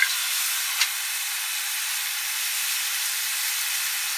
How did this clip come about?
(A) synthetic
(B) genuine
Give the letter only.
B